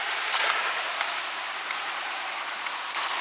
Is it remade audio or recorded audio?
recorded